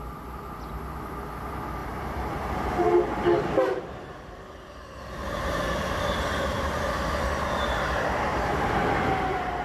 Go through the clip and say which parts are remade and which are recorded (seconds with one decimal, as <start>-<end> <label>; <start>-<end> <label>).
0.0-1.8 recorded; 1.8-6.0 remade; 6.0-8.3 recorded; 8.3-8.9 remade; 8.9-9.6 recorded